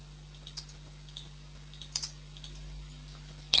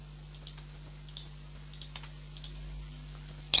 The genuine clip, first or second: second